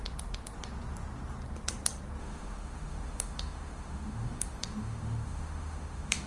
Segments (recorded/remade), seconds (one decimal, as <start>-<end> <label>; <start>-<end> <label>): 0.0-2.2 recorded; 2.2-6.3 remade